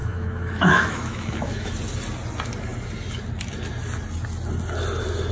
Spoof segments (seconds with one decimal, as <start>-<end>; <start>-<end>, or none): 0.0-1.7